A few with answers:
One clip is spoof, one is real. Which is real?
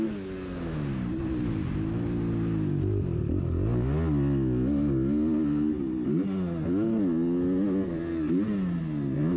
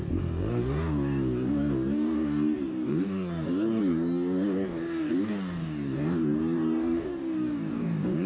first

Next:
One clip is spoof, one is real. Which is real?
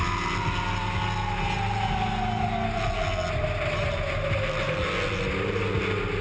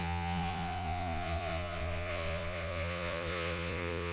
first